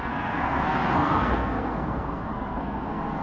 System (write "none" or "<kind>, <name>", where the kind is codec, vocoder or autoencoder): codec, SNAC